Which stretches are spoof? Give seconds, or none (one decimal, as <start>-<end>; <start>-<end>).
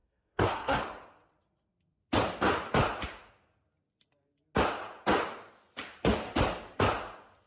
0.0-0.8